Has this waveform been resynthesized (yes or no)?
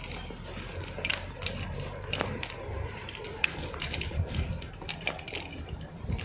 no